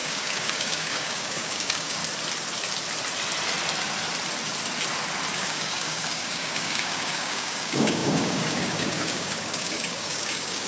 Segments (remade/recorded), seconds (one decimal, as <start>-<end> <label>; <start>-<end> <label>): 0.0-2.0 remade; 2.0-5.3 recorded; 5.3-10.7 remade